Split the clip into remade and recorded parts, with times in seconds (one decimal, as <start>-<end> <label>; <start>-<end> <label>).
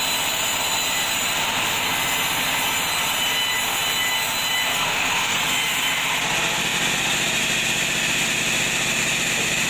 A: 0.0-4.7 recorded; 4.7-5.4 remade; 5.4-9.7 recorded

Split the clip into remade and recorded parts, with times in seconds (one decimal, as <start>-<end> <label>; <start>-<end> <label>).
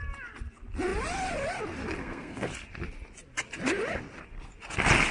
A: 0.0-2.0 recorded; 2.0-2.5 remade; 2.5-5.1 recorded